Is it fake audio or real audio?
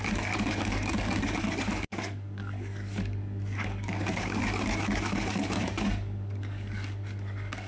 fake